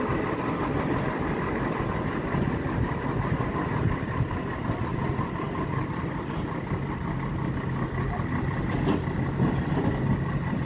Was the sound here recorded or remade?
recorded